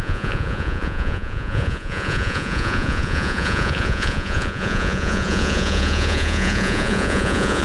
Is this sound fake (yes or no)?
yes